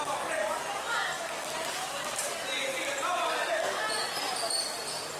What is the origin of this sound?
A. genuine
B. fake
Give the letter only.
A